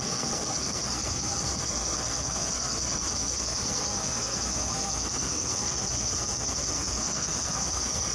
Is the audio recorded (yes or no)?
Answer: no